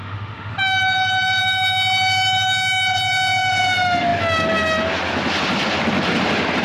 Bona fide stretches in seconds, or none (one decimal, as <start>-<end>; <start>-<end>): 0.5-6.6